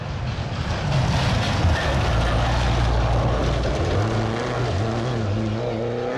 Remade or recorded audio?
recorded